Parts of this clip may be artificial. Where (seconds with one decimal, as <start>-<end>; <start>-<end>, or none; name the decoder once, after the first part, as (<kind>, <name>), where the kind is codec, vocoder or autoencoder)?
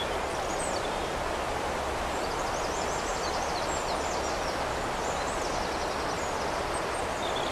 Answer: 0.5-1.1 (vocoder, BigVGAN v2)